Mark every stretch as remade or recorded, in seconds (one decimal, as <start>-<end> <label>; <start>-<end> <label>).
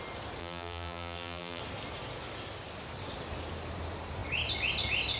0.0-0.4 recorded; 0.4-1.6 remade; 1.6-5.2 recorded